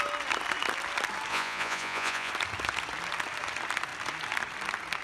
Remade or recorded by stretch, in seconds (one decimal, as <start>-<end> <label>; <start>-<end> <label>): 0.0-1.3 recorded; 1.3-2.3 remade; 2.3-5.0 recorded